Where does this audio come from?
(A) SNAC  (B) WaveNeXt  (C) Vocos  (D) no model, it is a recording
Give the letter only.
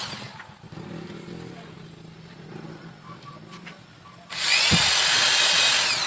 D